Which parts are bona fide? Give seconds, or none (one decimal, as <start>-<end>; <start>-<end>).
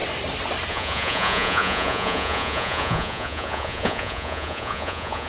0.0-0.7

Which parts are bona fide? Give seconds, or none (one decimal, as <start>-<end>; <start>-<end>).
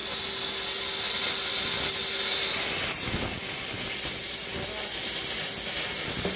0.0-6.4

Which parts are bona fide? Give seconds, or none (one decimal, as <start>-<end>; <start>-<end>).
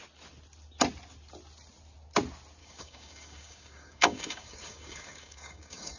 0.0-2.6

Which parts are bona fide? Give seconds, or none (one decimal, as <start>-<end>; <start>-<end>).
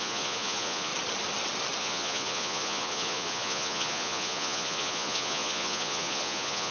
0.9-1.8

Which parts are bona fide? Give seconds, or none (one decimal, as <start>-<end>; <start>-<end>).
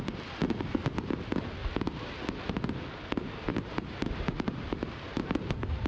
0.0-3.5; 4.9-5.9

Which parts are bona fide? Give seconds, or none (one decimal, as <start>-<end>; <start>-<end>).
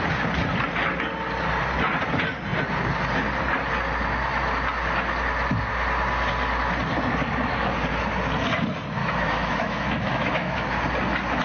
0.0-9.0; 10.8-11.4